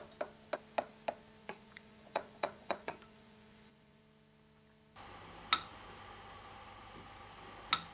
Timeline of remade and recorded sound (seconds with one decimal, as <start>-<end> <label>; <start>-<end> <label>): 0.0-1.4 recorded; 1.4-4.0 remade; 4.0-7.9 recorded